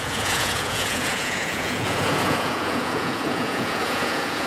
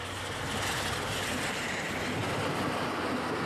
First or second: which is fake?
first